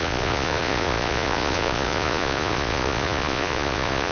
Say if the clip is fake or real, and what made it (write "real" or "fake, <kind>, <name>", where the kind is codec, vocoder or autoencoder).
fake, vocoder, Vocos